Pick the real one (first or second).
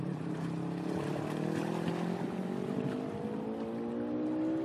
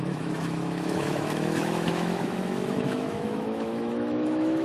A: first